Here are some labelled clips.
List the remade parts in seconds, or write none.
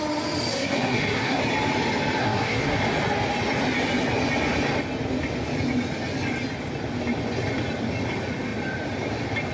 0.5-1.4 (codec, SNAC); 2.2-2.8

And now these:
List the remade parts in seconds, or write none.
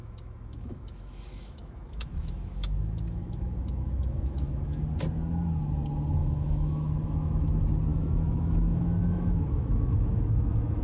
0.0-4.8 (autoencoder, DAC-VAE); 6.2-7.5; 7.9-10.8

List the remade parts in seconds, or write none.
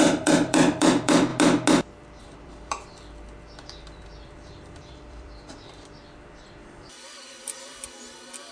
0.0-1.3 (vocoder, BigVGAN v2); 2.2-8.5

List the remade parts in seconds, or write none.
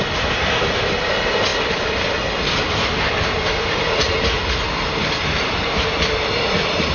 1.5-2.0 (vocoder, BigVGAN v2)